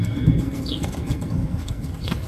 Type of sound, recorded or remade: remade